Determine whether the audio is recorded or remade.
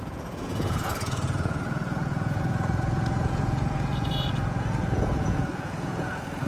remade